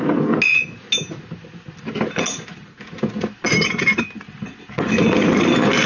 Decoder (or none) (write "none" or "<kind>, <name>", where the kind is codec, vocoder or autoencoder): none